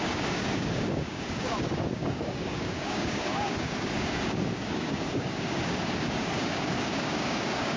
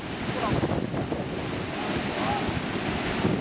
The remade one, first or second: first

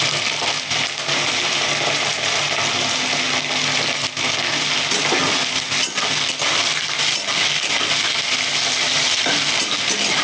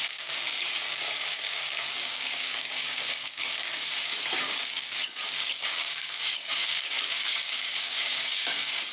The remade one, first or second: second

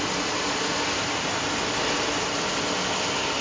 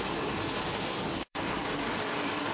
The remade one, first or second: second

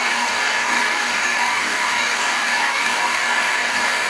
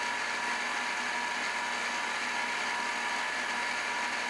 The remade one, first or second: first